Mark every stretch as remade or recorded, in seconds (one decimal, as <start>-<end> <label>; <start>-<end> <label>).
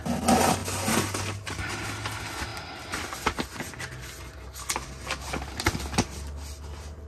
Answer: 0.0-7.1 recorded